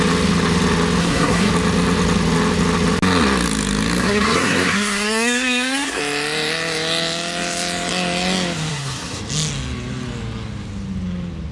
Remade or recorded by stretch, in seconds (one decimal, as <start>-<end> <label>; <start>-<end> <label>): 0.0-1.0 recorded; 1.0-1.5 remade; 1.5-4.0 recorded; 4.0-6.0 remade; 6.0-8.7 recorded; 8.7-9.2 remade; 9.2-11.5 recorded

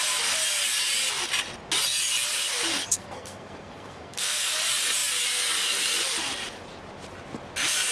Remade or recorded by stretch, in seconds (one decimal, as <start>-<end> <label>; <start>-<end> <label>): 0.0-2.8 recorded; 2.8-4.4 remade; 4.4-7.9 recorded